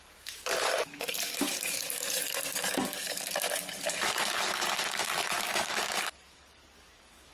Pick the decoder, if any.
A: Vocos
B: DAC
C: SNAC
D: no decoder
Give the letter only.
B